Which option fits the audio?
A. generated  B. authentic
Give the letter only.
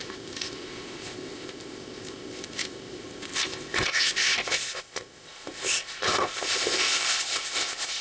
A